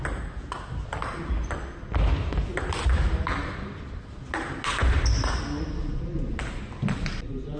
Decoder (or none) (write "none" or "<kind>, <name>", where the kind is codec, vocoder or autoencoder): none